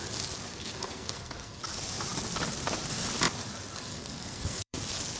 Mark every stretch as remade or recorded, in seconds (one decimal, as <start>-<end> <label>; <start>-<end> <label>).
0.0-0.5 recorded; 0.5-1.6 remade; 1.6-3.9 recorded; 3.9-4.8 remade; 4.8-5.2 recorded